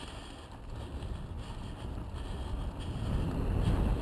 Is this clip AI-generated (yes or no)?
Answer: no